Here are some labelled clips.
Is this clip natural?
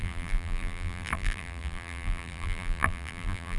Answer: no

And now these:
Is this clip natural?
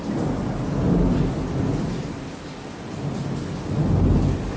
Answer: yes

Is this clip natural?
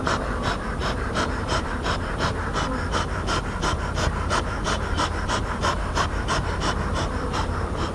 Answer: no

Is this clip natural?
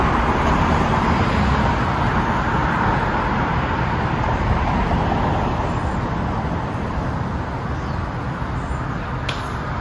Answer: yes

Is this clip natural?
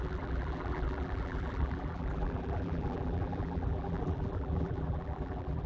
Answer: no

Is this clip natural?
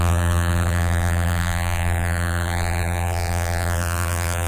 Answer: no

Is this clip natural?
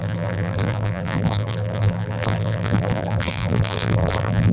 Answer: no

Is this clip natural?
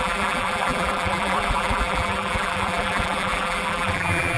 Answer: no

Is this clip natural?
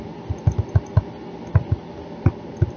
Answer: yes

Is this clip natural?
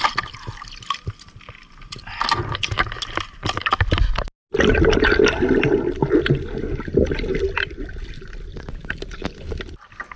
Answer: yes